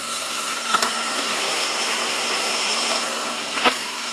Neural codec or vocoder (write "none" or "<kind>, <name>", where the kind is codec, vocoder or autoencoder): codec, SNAC